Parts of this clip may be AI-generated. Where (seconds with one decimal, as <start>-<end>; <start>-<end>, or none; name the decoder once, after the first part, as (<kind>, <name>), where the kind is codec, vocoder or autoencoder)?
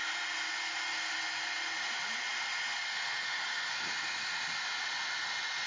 none